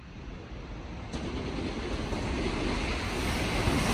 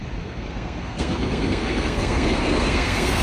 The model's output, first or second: second